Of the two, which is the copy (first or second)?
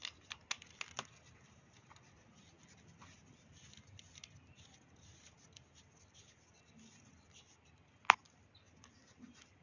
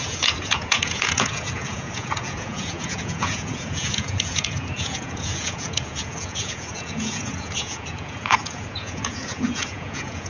second